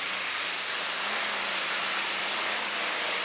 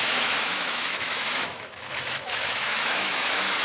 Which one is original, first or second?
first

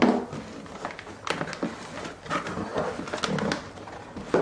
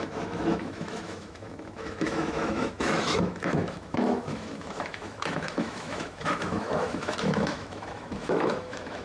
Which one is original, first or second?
first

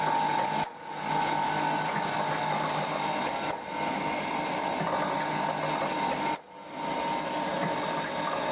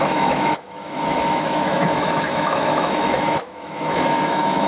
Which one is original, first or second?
first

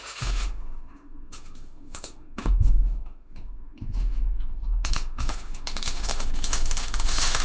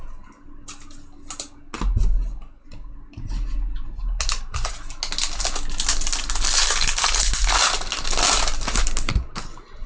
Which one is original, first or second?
second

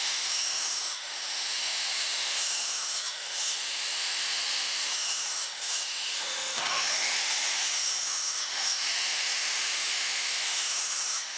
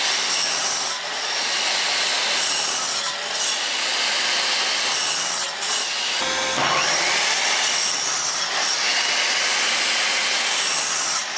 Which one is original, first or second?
second